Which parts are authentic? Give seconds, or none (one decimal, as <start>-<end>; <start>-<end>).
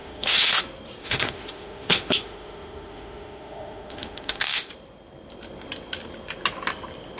0.6-1.0; 4.7-7.2